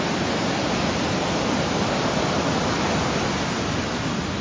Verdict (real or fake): real